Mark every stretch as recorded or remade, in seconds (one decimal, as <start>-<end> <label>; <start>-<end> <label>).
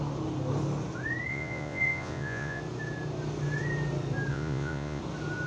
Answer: 0.0-1.3 recorded; 1.3-2.6 remade; 2.6-4.3 recorded; 4.3-5.0 remade; 5.0-5.5 recorded